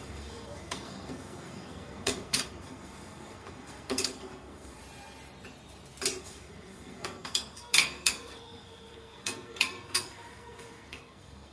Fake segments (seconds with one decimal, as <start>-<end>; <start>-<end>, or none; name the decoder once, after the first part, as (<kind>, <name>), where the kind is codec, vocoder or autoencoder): 0.0-4.8 (codec, SNAC); 6.2-11.5